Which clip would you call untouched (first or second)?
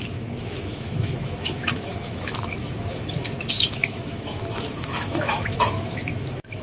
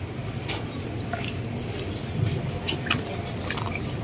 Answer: second